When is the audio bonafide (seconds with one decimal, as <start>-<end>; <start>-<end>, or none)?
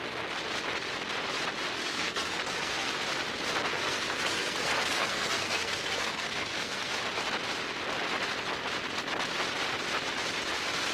0.0-1.8; 2.9-3.7; 6.9-10.9